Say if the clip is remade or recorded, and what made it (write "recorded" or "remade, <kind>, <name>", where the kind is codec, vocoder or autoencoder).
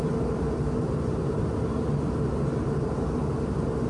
recorded